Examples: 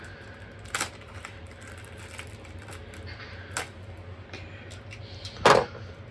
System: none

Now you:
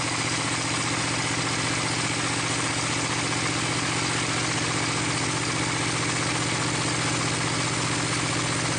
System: none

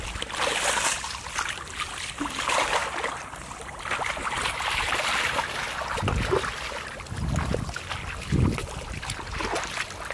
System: none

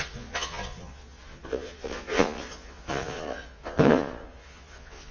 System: vocoder, Vocos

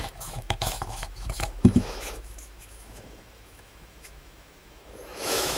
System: autoencoder, DAC-VAE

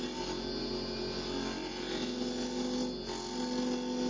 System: none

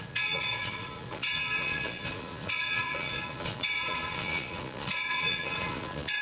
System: vocoder, Vocos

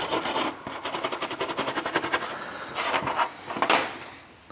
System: none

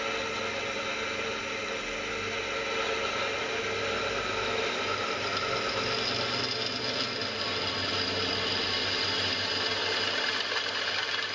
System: none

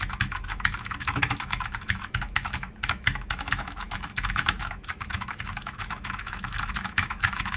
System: autoencoder, DAC-VAE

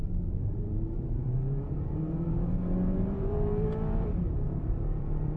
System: vocoder, BigVGAN v2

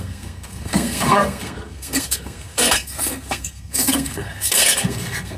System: codec, SNAC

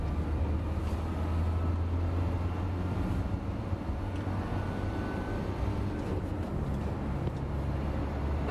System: none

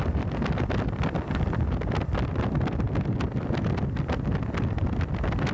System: none